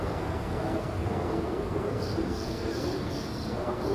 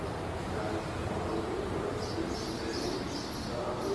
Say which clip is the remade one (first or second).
first